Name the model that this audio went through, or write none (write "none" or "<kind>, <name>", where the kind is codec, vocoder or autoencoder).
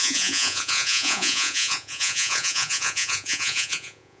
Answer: vocoder, Vocos